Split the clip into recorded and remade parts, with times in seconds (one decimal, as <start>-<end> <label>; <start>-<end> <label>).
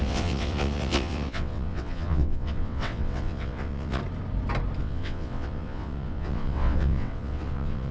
0.0-4.0 remade; 4.0-4.8 recorded; 4.8-7.9 remade